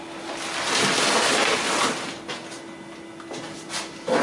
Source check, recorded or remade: recorded